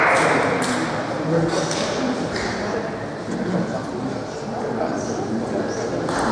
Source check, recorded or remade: recorded